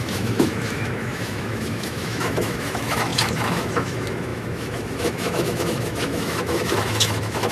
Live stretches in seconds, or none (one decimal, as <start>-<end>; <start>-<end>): none